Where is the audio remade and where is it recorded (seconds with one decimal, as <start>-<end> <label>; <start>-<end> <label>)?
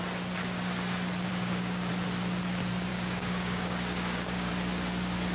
0.0-1.3 recorded; 1.3-1.9 remade; 1.9-2.9 recorded; 2.9-4.5 remade; 4.5-5.3 recorded